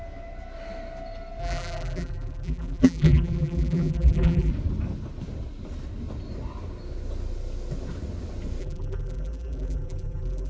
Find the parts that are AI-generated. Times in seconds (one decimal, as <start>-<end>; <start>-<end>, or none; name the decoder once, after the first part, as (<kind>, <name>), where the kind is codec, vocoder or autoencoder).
1.4-4.5 (vocoder, BigVGAN v2); 8.6-10.5